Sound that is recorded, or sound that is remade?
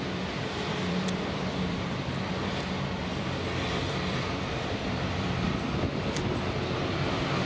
remade